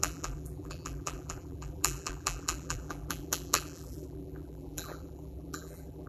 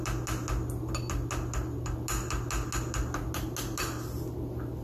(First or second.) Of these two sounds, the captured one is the second